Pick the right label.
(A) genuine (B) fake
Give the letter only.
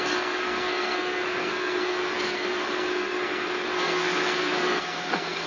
B